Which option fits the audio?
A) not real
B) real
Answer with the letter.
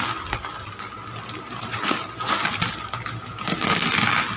B